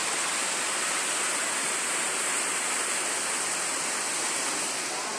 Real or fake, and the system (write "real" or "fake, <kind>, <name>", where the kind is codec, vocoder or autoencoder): real